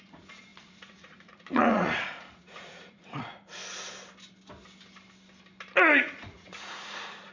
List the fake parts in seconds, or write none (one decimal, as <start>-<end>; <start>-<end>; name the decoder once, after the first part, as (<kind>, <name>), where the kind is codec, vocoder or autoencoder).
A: 0.0-3.6 (vocoder, Vocos); 6.0-7.3